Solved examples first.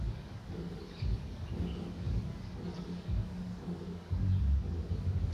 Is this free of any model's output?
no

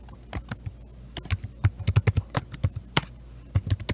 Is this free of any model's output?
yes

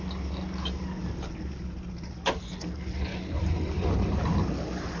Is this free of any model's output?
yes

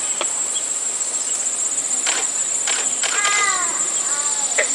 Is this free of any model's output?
yes